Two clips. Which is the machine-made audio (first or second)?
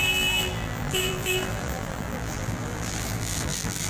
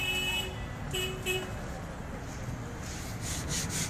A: first